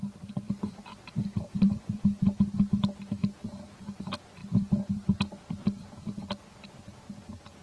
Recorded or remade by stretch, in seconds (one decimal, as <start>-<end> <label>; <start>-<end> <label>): 0.0-0.9 recorded; 0.9-2.0 remade; 2.0-7.6 recorded